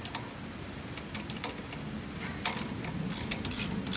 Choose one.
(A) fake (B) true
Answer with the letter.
B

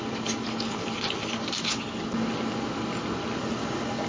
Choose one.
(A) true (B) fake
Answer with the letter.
A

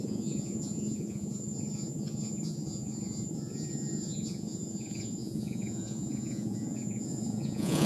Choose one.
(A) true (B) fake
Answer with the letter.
B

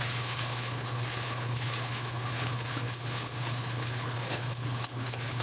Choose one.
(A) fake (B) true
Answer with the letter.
A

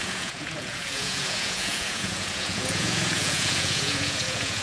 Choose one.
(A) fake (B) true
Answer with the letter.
A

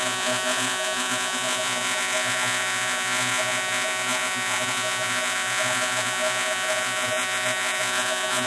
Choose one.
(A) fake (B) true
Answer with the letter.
A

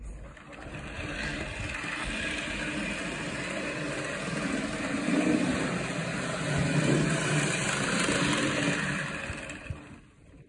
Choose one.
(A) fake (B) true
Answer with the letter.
B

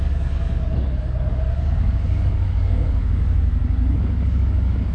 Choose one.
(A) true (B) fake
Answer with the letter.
B